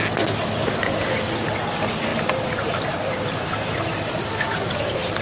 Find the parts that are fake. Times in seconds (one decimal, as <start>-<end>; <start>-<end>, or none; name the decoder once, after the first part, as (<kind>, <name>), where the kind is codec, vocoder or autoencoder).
2.1-4.1 (vocoder, BigVGAN v2)